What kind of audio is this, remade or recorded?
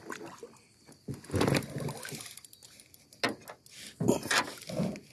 recorded